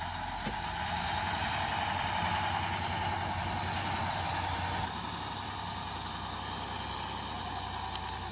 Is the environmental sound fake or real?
real